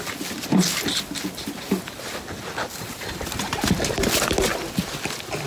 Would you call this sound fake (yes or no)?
no